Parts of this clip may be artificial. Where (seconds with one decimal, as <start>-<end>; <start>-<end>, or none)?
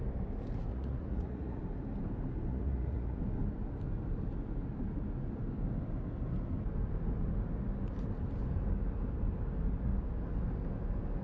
0.7-1.6; 2.5-3.2